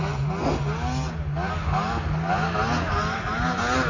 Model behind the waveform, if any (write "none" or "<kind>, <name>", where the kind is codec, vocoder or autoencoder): none